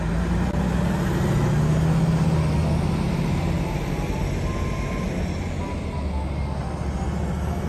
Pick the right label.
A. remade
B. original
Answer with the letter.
B